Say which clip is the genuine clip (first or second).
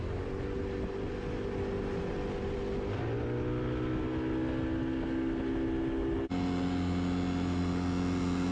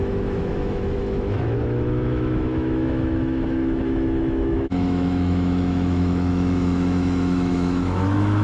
first